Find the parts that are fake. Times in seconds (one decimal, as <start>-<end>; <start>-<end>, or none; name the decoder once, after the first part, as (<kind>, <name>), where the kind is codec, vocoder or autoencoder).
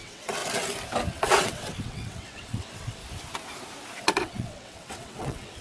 0.0-0.4 (vocoder, WaveNeXt); 1.1-3.0; 4.0-5.6